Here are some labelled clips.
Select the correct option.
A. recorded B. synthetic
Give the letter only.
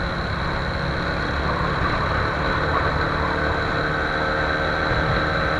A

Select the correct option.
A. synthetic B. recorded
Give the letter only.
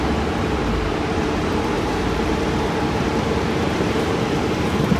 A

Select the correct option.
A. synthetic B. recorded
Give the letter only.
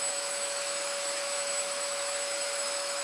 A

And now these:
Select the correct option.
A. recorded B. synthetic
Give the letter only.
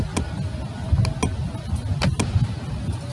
A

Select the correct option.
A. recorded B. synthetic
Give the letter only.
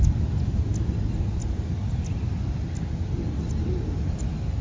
A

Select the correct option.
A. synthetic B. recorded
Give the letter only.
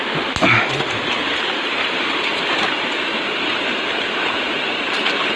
B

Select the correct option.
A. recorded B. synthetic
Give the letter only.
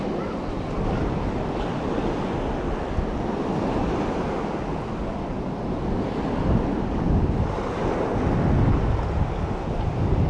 A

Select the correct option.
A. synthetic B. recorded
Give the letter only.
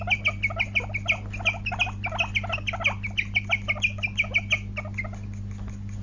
B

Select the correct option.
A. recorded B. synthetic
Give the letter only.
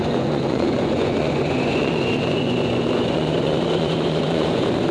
B